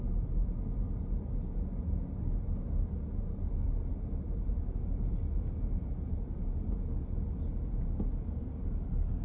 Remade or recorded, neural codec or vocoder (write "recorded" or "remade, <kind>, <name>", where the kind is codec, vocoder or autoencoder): recorded